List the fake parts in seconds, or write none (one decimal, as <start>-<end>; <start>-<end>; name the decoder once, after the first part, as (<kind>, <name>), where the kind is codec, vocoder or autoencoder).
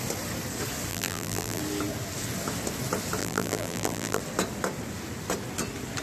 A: 0.9-1.6 (vocoder, BigVGAN v2); 3.2-4.2